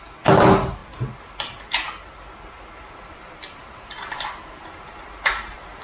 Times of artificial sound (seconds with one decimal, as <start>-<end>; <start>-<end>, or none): none